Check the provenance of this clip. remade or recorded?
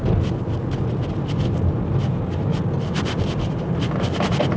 recorded